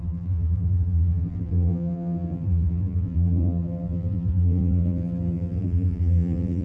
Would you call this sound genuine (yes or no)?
no